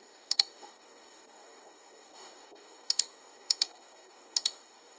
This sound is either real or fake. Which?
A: fake